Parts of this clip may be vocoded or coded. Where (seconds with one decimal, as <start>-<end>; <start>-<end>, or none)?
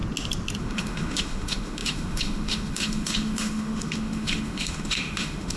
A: 0.6-5.6